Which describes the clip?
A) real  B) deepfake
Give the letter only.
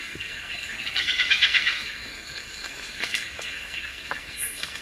B